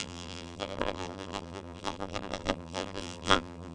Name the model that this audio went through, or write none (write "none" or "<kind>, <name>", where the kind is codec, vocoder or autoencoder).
vocoder, BigVGAN v2